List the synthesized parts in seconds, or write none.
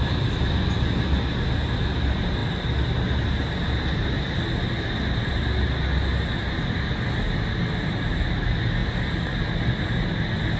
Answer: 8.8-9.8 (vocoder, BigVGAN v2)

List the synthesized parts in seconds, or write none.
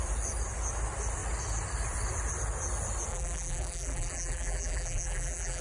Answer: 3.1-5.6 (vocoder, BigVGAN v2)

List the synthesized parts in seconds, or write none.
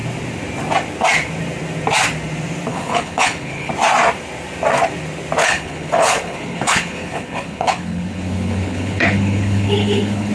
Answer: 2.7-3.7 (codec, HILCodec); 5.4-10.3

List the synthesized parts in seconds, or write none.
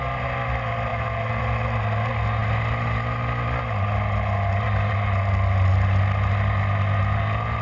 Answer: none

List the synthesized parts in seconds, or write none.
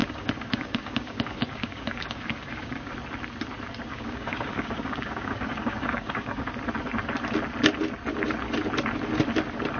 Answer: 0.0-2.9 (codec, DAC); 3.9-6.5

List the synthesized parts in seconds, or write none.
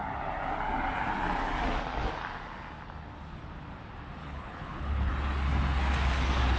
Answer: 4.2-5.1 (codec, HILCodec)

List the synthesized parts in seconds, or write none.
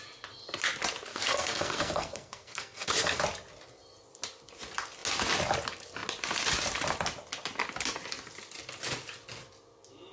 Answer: 1.1-3.2 (codec, SNAC)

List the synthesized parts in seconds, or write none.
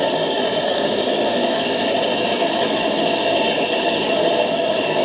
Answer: 0.0-5.0 (codec, DAC)